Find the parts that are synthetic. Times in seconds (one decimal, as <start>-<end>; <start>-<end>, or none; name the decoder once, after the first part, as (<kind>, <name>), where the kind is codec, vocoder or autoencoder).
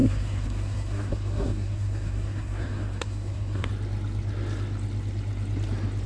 0.0-3.7 (codec, SNAC)